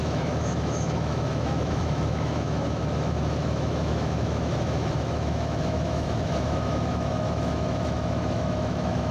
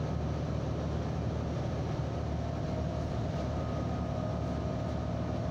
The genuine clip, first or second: second